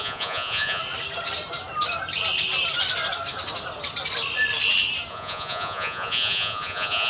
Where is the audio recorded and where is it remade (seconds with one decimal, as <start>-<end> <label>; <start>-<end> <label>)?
0.0-0.8 remade; 0.8-5.1 recorded; 5.1-7.1 remade